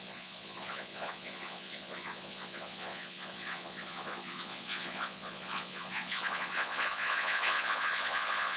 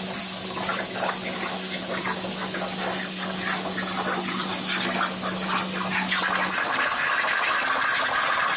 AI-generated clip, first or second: first